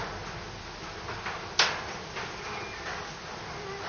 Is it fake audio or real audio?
real